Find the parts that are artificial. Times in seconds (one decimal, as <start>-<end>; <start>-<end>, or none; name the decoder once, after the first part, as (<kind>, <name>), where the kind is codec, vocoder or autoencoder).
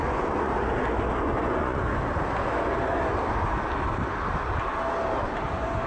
0.0-0.5 (vocoder, Vocos); 1.2-2.0; 5.5-5.9